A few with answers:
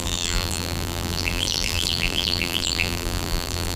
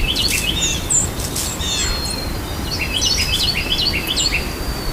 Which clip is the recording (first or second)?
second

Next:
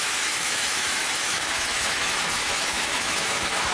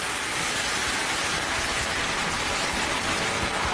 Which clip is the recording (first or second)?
second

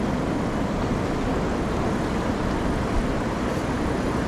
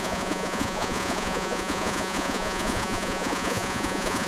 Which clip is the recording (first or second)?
first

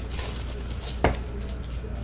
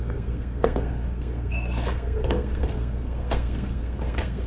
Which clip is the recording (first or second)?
first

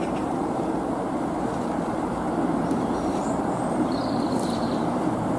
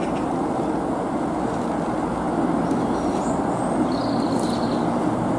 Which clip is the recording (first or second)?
second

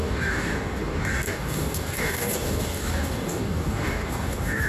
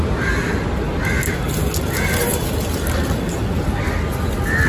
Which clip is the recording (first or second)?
second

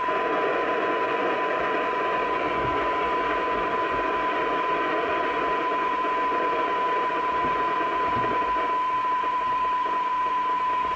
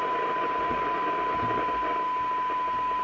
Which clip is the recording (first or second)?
second